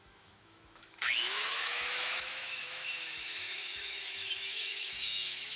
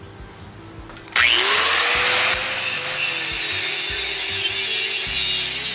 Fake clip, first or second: first